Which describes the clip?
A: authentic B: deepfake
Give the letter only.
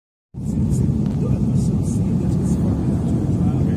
A